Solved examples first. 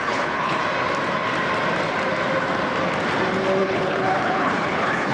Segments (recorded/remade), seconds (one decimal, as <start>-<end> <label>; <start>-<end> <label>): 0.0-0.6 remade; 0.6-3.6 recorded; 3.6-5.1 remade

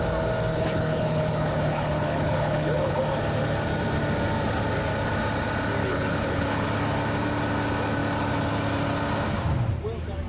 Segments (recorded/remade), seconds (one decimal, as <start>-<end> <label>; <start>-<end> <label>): 0.0-0.5 recorded; 0.5-3.0 remade; 3.0-5.8 recorded; 5.8-6.7 remade; 6.7-10.3 recorded

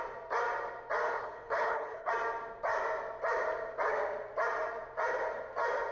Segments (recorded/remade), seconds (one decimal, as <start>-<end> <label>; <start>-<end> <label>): 0.0-1.2 recorded; 1.2-2.1 remade; 2.1-5.9 recorded

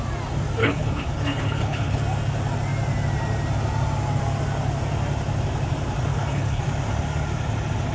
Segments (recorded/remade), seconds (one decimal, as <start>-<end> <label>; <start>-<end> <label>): 0.0-0.6 recorded; 0.6-2.0 remade; 2.0-6.1 recorded; 6.1-6.6 remade; 6.6-7.9 recorded

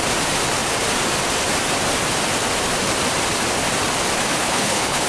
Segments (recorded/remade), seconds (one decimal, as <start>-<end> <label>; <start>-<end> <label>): 0.0-4.4 recorded; 4.4-5.1 remade

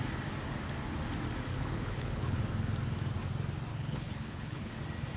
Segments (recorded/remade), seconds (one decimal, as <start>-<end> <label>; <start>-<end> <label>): 0.0-1.5 recorded; 1.5-2.4 remade; 2.4-3.7 recorded; 3.7-4.7 remade; 4.7-5.2 recorded

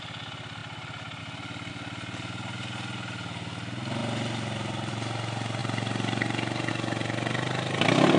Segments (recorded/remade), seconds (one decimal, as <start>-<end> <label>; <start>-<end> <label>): 0.0-8.2 recorded

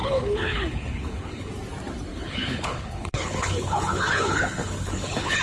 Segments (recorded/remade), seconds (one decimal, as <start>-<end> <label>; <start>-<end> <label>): 0.0-1.5 remade; 1.5-2.1 recorded; 2.1-5.4 remade